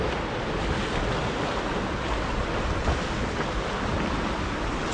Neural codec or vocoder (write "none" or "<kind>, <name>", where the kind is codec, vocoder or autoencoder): none